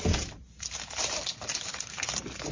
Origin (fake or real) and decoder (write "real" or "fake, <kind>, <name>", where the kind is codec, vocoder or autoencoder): fake, vocoder, BigVGAN v2